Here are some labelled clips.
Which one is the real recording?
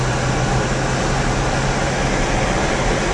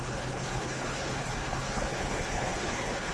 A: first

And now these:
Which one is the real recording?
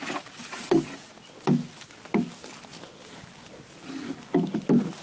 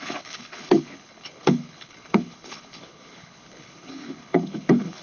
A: first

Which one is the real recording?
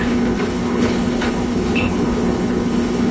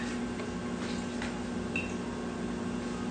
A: second